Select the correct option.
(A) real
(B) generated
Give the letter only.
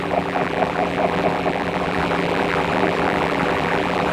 B